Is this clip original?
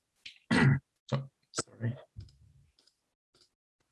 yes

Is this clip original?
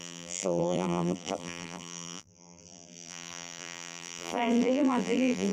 no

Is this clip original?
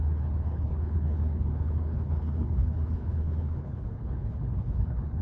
no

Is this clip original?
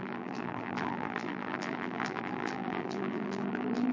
no